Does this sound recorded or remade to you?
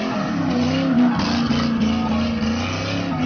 recorded